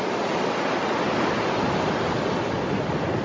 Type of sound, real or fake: real